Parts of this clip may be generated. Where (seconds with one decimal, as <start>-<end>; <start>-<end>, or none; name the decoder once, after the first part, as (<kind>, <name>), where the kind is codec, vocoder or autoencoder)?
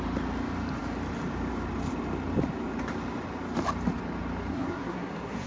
4.5-5.5 (codec, SNAC)